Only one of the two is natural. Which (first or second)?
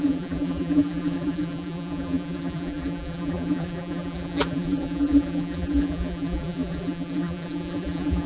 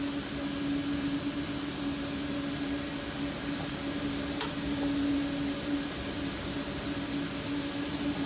second